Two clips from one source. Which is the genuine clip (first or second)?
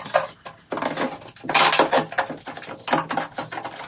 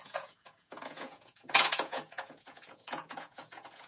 first